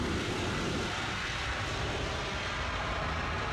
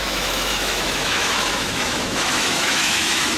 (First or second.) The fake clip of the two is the second